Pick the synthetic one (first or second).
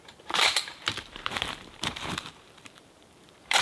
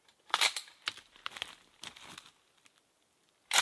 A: first